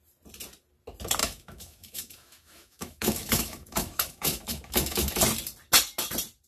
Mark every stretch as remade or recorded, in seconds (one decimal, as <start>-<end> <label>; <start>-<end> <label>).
0.0-1.2 recorded; 1.2-5.1 remade; 5.1-6.5 recorded